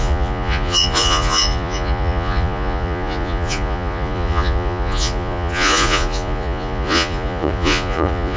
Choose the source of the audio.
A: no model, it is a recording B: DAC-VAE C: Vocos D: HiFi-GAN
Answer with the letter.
C